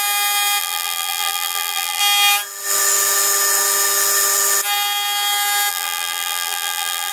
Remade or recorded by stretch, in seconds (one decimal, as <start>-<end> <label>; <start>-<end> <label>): 0.0-0.6 recorded; 0.6-2.0 remade; 2.0-5.7 recorded; 5.7-7.1 remade